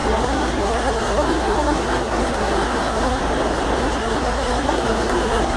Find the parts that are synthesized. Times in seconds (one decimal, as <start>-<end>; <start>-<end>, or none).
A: 0.0-3.2; 3.8-5.6

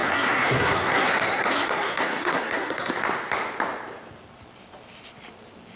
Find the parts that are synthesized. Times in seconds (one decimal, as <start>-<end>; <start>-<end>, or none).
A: 0.0-2.9

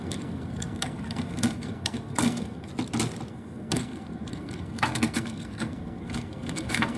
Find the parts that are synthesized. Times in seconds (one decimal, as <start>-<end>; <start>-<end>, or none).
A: 0.0-2.7; 3.3-7.0

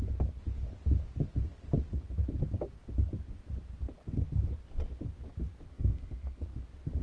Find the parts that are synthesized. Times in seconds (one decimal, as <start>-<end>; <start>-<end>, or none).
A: 5.7-6.4

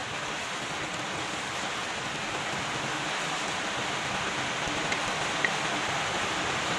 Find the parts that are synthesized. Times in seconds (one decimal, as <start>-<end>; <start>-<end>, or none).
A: none